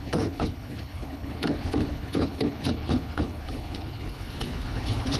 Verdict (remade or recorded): remade